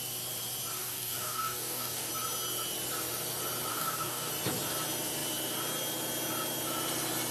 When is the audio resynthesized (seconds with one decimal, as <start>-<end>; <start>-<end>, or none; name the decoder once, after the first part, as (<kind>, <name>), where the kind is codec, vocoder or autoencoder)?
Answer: 0.8-2.1 (codec, DAC); 3.7-4.3